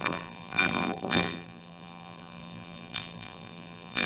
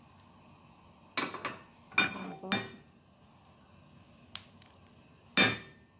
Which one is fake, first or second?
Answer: first